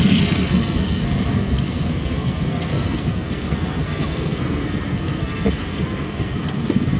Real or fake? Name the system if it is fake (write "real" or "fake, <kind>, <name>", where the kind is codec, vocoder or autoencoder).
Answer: fake, codec, SNAC